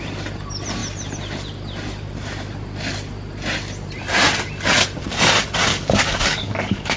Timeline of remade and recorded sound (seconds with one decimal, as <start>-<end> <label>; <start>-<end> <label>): 0.0-5.7 recorded; 5.7-7.0 remade